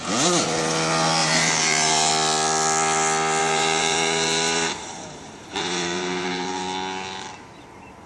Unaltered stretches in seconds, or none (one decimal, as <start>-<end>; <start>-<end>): 0.0-1.2; 2.1-3.4; 6.6-8.1